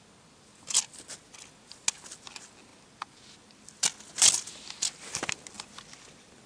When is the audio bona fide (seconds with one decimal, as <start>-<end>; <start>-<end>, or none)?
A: 0.0-6.5